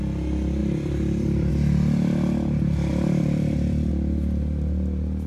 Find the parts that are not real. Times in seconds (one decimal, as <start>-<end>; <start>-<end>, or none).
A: 0.6-1.5; 2.9-3.9